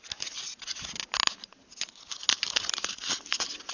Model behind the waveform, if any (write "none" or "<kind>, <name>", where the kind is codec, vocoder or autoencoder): none